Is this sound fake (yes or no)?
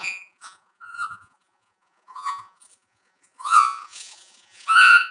yes